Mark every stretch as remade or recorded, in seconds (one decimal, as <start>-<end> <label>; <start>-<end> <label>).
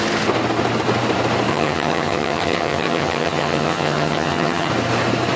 0.0-1.5 recorded; 1.5-4.7 remade; 4.7-5.4 recorded